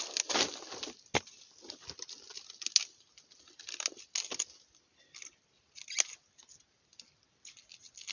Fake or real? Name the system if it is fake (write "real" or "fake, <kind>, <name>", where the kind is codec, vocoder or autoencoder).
real